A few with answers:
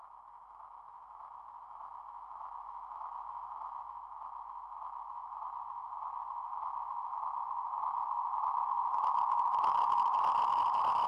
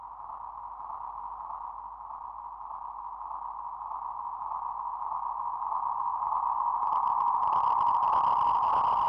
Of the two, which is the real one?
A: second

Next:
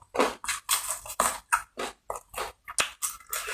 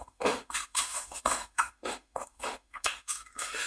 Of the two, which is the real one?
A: first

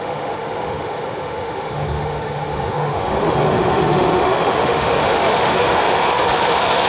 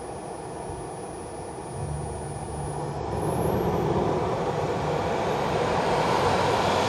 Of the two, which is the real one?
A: second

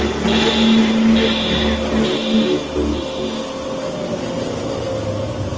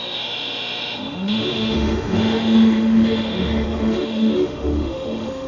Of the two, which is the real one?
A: first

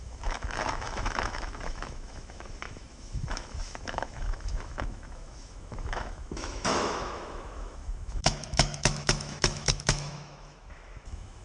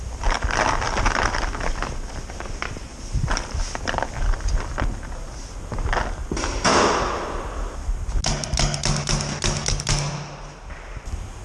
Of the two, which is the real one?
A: second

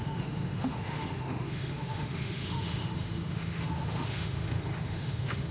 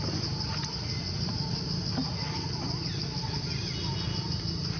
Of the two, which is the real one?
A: second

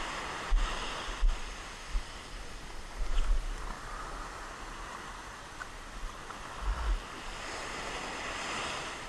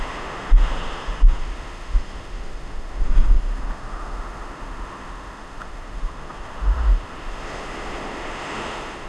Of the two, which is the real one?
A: first